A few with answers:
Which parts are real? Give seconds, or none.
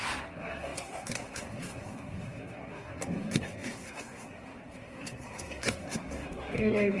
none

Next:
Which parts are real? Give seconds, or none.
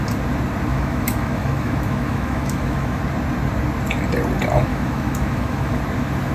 0.0-0.7; 3.0-4.7; 5.8-6.3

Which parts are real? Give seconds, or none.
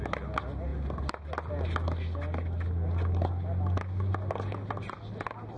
0.0-5.6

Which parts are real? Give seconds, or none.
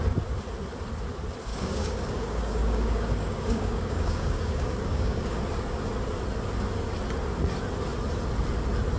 0.0-1.5; 5.4-9.0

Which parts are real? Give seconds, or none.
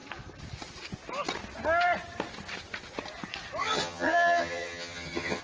0.0-3.6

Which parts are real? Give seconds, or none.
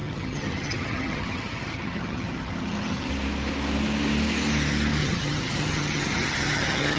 3.1-5.0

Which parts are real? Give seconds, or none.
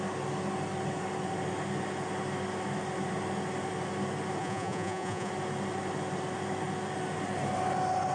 0.0-4.4; 5.3-8.1